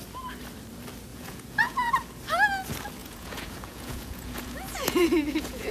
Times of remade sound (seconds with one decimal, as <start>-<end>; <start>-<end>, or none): 1.1-1.9; 3.0-5.7